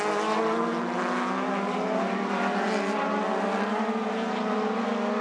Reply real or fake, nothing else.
real